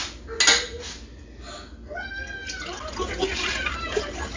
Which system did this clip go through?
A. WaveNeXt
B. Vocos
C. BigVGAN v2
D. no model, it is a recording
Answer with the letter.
D